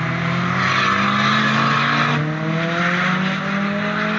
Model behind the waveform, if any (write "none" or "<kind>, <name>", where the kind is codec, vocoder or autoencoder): none